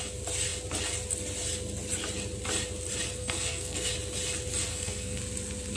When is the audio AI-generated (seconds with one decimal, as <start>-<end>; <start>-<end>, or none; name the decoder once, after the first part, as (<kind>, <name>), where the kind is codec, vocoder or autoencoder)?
3.2-3.9 (codec, SNAC); 4.7-5.2